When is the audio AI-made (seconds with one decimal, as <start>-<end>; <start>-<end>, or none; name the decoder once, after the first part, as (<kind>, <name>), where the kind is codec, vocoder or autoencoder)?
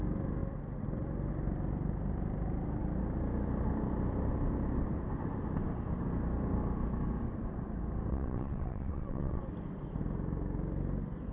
8.1-9.4 (vocoder, WaveNeXt)